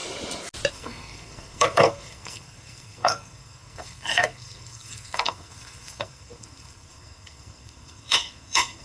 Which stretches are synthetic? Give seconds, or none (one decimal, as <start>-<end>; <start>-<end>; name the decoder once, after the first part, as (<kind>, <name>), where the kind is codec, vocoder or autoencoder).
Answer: 0.7-8.8 (codec, SNAC)